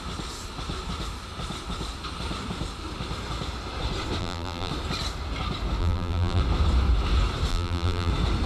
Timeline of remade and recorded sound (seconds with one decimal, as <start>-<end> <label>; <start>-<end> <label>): 0.0-4.2 recorded; 4.2-4.7 remade; 4.7-5.8 recorded; 5.8-6.4 remade; 6.4-7.5 recorded; 7.5-8.1 remade; 8.1-8.5 recorded